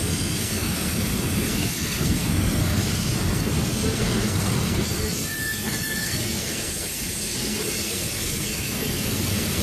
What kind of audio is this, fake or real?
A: fake